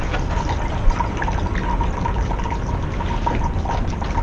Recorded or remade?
recorded